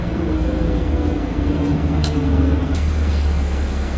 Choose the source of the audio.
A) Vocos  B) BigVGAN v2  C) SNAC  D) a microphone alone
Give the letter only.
C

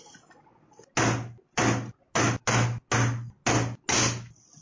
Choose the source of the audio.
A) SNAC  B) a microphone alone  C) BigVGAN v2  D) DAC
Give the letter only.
B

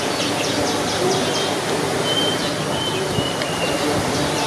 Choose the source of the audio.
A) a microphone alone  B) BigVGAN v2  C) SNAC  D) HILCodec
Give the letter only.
A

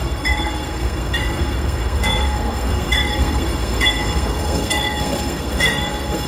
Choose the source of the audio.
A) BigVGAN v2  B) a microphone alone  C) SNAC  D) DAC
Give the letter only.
C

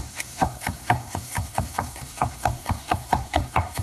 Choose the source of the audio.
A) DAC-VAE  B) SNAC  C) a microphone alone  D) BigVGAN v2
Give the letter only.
B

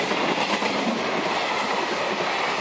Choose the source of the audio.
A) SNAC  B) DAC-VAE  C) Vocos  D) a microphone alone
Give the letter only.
D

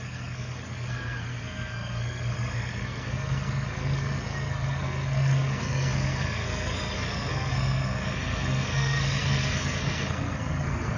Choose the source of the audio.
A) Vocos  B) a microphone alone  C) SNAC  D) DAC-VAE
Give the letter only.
C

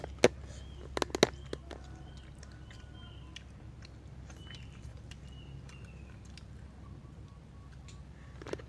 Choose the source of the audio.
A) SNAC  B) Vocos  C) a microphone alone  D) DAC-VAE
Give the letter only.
C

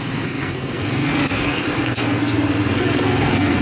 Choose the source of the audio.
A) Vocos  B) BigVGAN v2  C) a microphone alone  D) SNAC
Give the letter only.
D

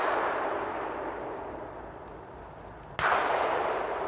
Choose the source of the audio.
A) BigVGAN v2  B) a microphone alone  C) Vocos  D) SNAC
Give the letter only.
B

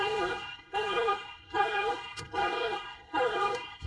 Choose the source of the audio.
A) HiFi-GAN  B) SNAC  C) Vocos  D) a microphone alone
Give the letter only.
B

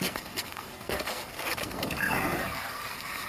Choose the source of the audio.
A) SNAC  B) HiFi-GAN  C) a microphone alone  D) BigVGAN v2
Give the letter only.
A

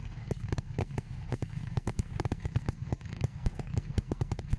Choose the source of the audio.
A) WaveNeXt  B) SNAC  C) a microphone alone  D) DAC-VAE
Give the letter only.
B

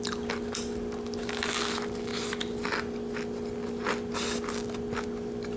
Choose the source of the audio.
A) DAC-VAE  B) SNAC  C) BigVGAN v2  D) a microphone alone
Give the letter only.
D